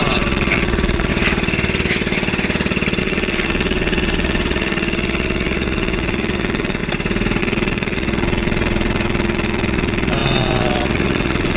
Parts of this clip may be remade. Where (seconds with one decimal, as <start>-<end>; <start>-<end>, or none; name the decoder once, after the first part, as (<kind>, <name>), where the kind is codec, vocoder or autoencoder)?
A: 0.0-1.1 (vocoder, WaveNeXt); 3.0-6.8; 7.4-11.6